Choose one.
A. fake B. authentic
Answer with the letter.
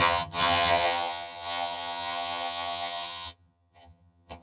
A